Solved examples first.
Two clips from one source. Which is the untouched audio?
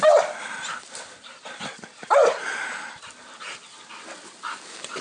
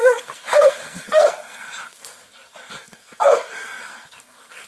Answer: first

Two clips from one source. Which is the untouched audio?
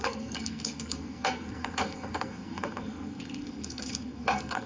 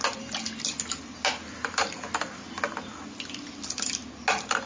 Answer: second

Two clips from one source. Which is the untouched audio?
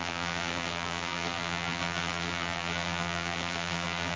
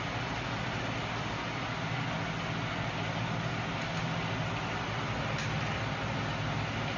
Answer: second